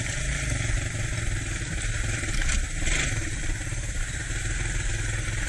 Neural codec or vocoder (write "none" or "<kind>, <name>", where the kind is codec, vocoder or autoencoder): none